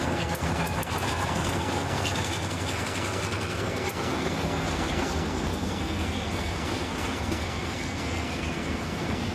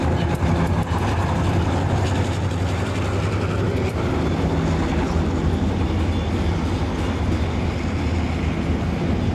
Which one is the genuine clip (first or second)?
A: second